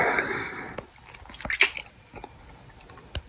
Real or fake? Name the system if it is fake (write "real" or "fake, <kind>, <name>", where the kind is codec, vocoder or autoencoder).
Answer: real